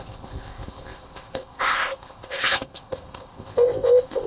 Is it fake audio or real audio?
fake